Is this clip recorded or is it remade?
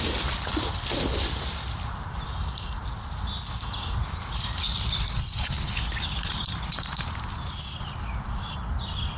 recorded